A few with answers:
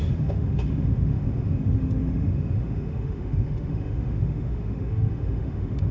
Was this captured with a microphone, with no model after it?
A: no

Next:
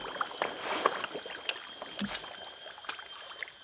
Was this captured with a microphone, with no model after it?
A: yes